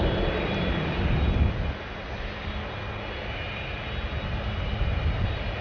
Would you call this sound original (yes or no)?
yes